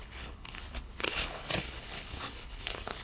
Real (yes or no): no